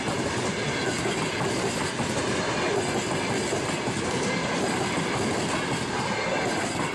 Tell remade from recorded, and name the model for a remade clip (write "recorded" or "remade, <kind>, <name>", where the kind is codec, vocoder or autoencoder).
recorded